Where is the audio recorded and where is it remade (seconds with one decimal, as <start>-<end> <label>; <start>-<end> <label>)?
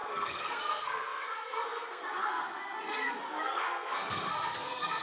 0.0-5.0 remade